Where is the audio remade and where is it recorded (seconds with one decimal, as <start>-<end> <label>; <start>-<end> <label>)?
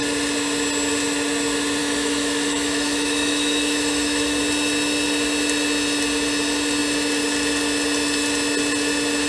0.0-1.8 recorded; 1.8-4.4 remade; 4.4-9.3 recorded